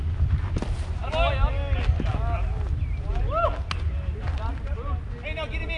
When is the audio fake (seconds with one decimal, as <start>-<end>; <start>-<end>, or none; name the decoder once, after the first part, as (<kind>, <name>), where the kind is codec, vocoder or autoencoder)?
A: none